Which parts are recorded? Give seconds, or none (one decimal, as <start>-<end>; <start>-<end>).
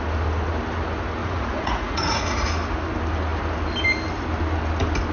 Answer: 0.0-1.2; 2.5-5.1